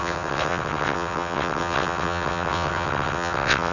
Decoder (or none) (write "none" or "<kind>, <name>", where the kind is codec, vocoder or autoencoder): vocoder, WaveNeXt